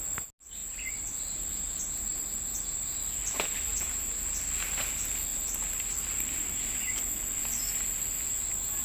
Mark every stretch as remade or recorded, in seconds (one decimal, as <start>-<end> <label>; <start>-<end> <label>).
0.0-0.6 recorded; 0.6-2.0 remade; 2.0-3.7 recorded; 3.7-4.5 remade; 4.5-8.8 recorded

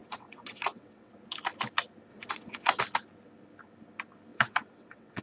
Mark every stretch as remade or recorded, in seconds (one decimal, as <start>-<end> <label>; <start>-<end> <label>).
0.0-1.1 remade; 1.1-2.1 recorded; 2.1-2.8 remade; 2.8-4.3 recorded; 4.3-5.2 remade

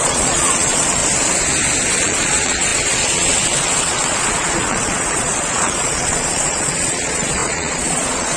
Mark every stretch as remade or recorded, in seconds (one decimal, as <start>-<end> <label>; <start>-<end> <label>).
0.0-1.0 remade; 1.0-1.9 recorded; 1.9-8.4 remade

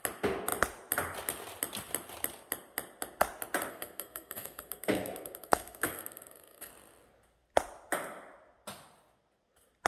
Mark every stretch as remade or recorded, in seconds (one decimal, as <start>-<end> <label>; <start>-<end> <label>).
0.0-3.7 recorded; 3.7-6.7 remade; 6.7-9.9 recorded

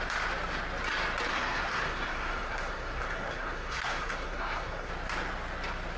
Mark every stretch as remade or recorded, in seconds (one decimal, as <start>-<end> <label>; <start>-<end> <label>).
0.0-1.3 recorded; 1.3-4.9 remade; 4.9-6.0 recorded